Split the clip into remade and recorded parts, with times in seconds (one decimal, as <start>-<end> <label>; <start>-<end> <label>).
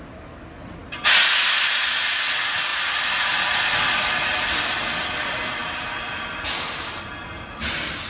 0.0-8.1 recorded